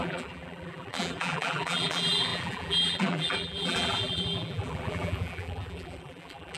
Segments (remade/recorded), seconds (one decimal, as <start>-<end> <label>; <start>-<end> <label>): 0.0-6.6 remade